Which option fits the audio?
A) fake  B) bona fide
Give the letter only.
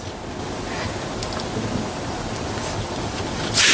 B